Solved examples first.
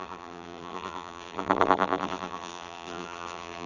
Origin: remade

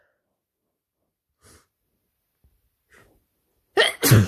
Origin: recorded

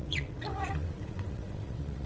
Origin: remade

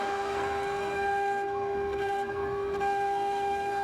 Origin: remade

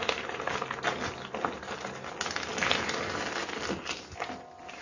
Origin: recorded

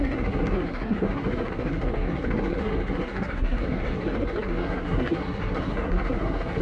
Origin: remade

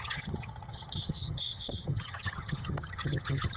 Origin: remade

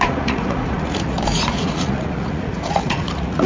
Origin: remade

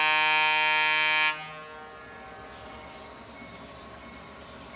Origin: recorded